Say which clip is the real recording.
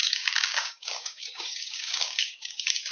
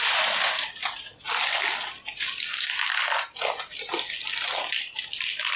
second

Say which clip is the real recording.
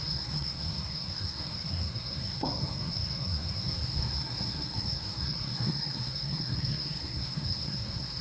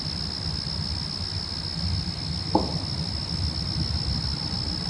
second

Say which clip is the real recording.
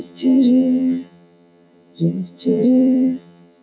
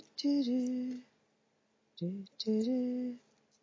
second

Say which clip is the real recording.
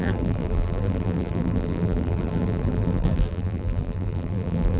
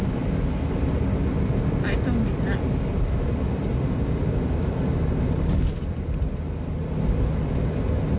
second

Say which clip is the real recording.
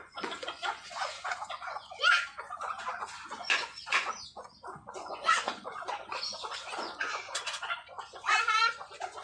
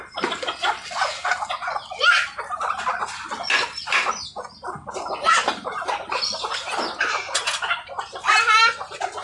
second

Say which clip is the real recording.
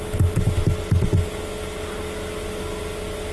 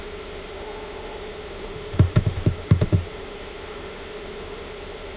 first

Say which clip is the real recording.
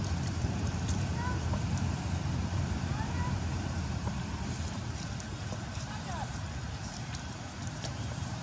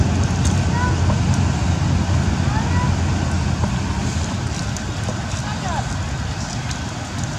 second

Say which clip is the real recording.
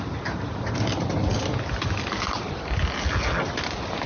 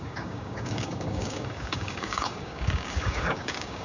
first